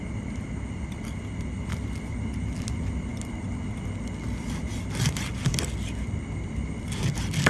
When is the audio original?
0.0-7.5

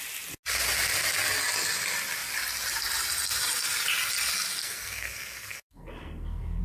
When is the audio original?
0.0-4.6

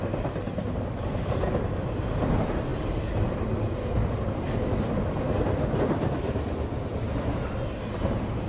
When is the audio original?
0.0-8.5

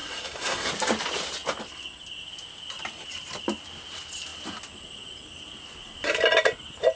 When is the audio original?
0.7-7.0

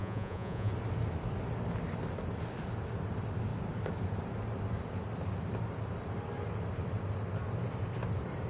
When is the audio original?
0.7-8.5

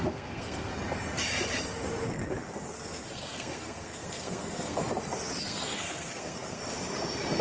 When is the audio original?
0.7-2.8; 4.8-5.4; 6.6-7.4